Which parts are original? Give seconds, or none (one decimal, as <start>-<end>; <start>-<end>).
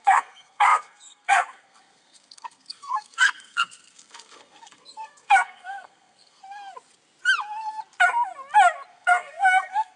6.4-8.9